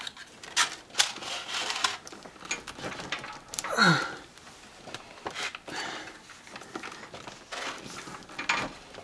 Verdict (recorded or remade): recorded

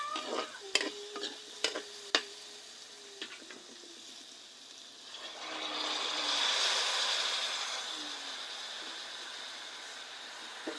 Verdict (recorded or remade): recorded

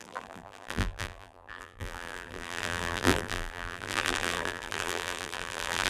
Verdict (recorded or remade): remade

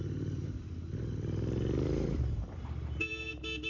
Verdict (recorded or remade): remade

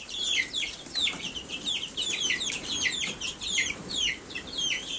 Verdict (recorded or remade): remade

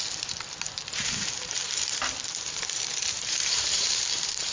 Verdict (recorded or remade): remade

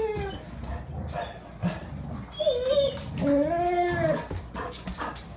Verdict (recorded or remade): recorded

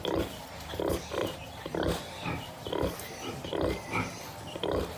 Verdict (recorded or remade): recorded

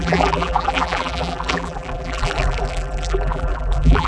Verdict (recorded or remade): remade